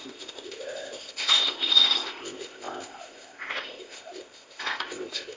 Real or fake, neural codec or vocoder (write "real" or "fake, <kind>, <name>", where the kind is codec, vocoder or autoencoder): fake, codec, ZipCodec